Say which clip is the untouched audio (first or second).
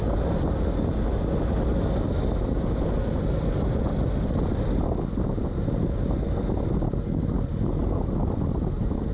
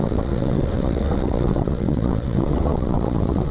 first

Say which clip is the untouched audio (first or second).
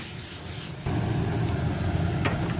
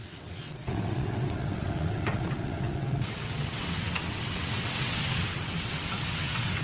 first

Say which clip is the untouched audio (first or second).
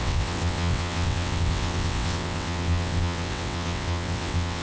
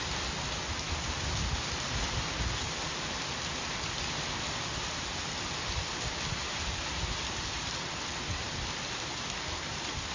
second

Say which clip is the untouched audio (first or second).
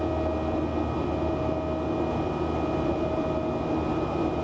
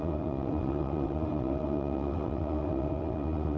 first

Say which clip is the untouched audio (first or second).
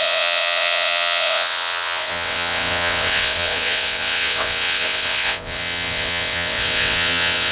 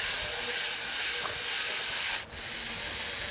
second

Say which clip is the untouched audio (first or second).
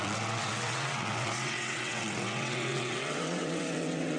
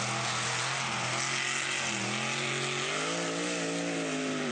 second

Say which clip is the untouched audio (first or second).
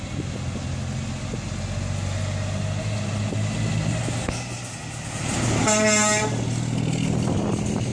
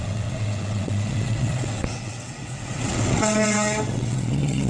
first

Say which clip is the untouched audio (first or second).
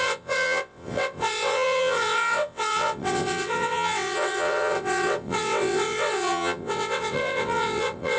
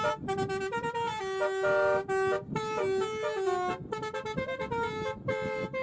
second